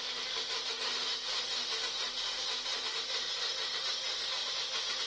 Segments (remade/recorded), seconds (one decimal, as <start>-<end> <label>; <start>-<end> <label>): 0.0-5.1 recorded